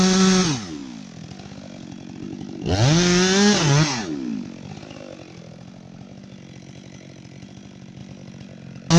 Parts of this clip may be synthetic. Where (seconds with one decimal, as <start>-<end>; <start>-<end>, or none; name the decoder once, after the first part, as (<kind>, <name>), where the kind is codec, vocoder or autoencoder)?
none